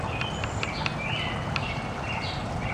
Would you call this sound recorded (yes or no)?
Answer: yes